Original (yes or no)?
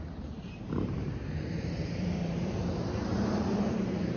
no